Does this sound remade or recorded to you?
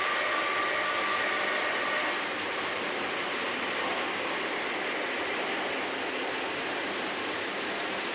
recorded